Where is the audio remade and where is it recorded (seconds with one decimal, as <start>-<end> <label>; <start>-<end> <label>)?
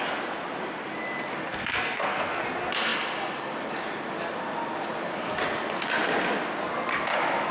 0.0-1.5 recorded; 1.5-2.4 remade; 2.4-7.5 recorded